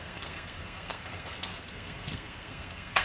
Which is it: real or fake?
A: fake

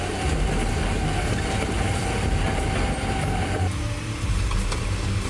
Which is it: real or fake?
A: real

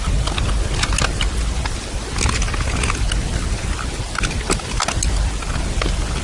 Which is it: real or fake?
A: real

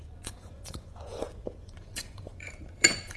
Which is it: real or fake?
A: fake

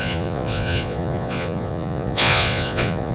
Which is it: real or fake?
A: fake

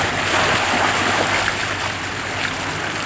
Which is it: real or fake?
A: real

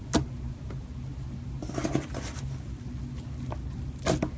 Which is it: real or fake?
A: real